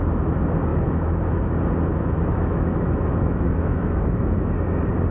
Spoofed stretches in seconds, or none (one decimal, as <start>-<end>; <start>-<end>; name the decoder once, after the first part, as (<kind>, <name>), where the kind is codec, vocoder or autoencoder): 0.7-1.4 (autoencoder, DAC-VAE); 1.9-4.5